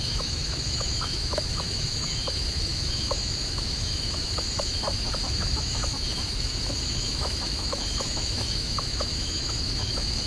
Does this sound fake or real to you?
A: fake